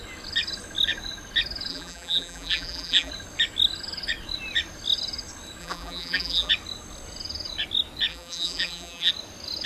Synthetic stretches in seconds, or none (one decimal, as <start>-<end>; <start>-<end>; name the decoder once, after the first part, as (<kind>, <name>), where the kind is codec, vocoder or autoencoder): 1.7-3.1 (vocoder, BigVGAN v2); 5.6-6.5; 8.1-9.1